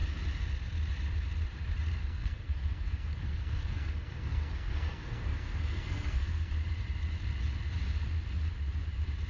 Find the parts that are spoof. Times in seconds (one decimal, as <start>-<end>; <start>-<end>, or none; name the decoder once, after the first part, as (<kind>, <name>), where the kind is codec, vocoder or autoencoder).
2.0-6.5 (codec, SNAC)